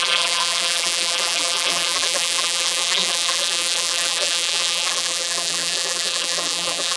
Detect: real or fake fake